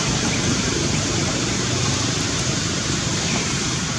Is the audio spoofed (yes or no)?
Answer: yes